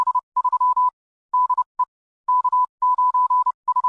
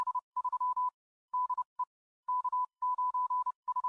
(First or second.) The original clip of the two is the first